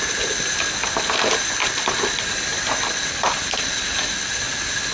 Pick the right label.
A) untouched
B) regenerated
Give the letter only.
A